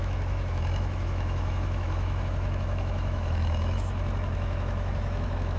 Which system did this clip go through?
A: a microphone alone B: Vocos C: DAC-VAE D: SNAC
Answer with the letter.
C